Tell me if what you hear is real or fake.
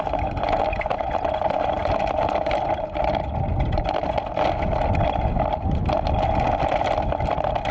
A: real